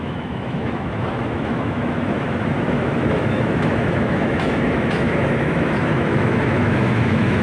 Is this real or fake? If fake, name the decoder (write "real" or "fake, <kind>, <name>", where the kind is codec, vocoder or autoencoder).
fake, autoencoder, DAC-VAE